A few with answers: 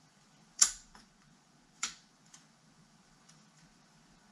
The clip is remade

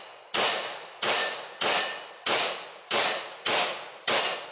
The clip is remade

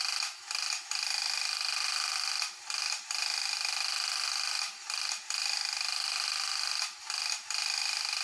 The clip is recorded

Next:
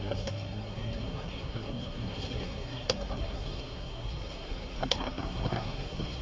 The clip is remade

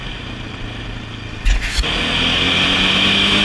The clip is recorded